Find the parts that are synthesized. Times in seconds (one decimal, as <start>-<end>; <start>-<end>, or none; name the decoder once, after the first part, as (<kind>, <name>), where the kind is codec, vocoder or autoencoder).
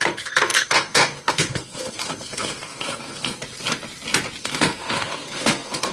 0.0-3.4 (codec, SNAC); 4.4-5.9